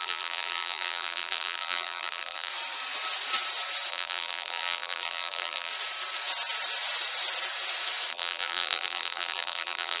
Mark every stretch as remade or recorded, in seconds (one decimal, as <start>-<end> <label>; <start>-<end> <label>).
0.0-2.5 remade; 2.5-3.9 recorded; 3.9-5.7 remade; 5.7-8.1 recorded; 8.1-10.0 remade